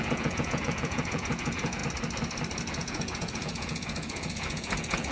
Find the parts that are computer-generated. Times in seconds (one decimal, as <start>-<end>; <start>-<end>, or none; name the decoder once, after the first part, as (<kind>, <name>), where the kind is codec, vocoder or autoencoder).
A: 0.0-1.8 (vocoder, Vocos); 2.6-5.1